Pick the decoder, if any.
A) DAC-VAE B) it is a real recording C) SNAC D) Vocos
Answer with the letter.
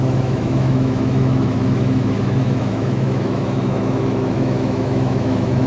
A